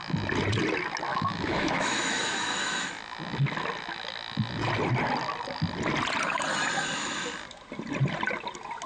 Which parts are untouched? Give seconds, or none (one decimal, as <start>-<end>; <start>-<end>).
0.0-1.1; 2.9-8.9